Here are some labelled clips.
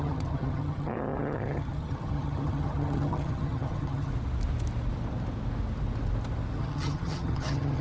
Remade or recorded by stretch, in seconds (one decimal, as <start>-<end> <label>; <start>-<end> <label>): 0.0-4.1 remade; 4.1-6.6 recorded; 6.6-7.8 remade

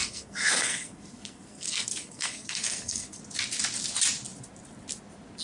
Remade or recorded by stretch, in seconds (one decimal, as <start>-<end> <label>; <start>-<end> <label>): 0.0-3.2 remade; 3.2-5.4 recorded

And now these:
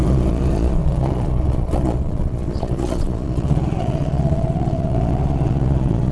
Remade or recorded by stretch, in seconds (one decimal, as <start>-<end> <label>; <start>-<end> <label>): 0.0-6.1 remade